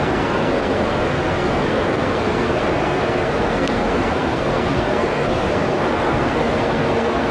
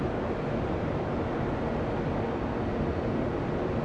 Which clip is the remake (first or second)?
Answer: first